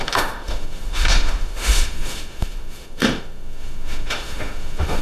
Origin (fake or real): fake